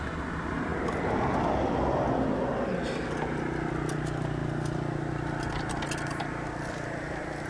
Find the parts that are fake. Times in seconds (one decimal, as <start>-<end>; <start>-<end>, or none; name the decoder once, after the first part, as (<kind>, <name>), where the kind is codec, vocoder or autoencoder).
none